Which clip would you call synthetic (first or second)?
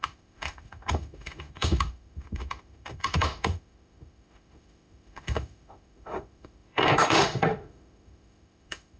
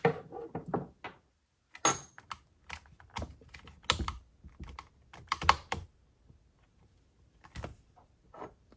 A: first